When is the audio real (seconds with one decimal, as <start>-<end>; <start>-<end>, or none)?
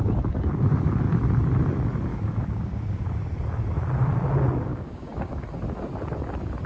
0.0-2.1; 3.1-4.7; 5.4-6.7